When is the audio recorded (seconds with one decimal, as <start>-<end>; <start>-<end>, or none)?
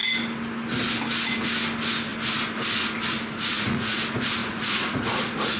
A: 0.0-3.5; 4.0-4.4